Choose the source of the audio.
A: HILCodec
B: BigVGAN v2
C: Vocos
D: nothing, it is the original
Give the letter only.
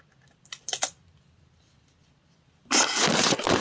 D